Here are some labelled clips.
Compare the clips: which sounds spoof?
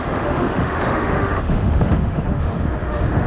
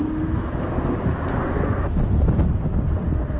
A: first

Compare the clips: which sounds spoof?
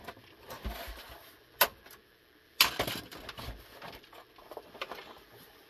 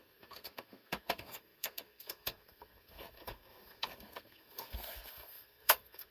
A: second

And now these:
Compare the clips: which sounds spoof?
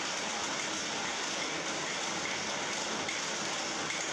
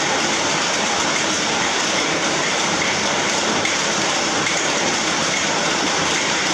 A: second